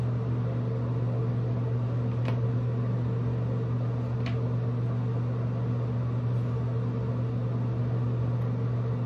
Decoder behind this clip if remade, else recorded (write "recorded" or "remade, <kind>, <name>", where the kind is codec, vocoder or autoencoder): recorded